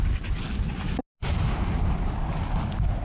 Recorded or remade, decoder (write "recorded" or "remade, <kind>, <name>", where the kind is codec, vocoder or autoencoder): recorded